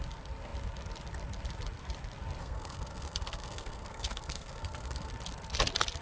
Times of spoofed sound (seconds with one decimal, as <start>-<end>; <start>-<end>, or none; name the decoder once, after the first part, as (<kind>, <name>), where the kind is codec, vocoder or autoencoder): 2.4-5.1 (codec, SNAC)